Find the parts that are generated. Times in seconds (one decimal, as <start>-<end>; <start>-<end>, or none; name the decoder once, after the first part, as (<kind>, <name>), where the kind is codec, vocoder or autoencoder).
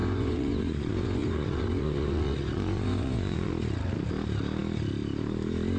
0.0-3.5 (vocoder, Vocos)